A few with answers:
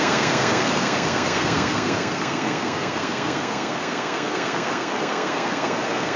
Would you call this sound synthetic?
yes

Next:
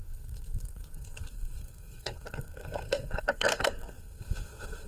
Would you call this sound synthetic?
yes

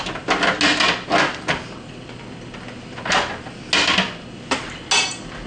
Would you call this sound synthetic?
no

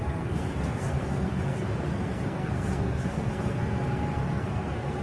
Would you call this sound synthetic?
yes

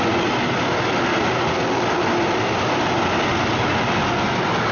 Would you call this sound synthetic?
no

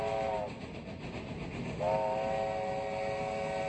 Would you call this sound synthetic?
no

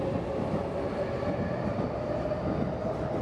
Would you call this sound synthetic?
no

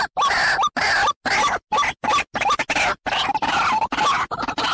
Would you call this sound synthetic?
no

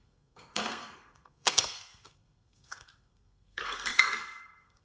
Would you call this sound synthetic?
yes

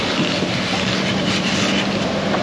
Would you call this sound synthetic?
no